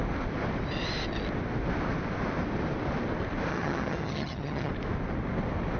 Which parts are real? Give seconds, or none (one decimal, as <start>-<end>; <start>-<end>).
0.0-3.5; 4.7-5.8